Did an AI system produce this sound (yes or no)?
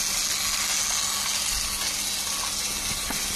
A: no